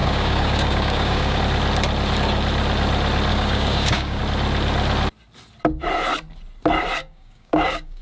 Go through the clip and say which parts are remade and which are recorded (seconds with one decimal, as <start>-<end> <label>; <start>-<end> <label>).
0.0-1.4 remade; 1.4-3.3 recorded; 3.3-4.2 remade; 4.2-7.0 recorded; 7.0-8.0 remade